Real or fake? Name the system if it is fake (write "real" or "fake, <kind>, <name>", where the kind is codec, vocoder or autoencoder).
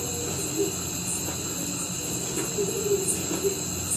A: real